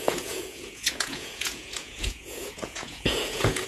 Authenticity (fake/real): fake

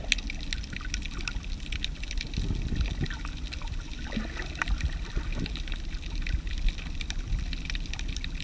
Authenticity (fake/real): real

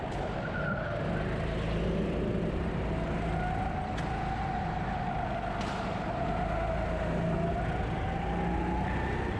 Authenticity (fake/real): real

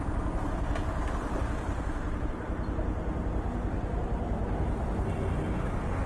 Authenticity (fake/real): real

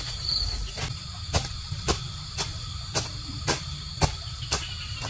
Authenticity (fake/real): real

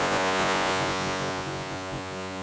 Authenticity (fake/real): fake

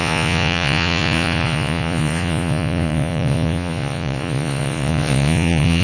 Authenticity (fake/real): fake